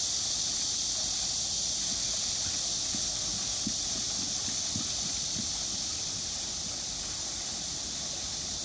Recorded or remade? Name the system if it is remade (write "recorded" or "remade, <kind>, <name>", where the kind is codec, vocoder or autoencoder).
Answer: recorded